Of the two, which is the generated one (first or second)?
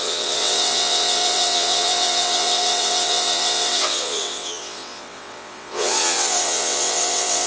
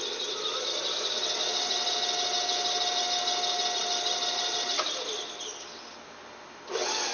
first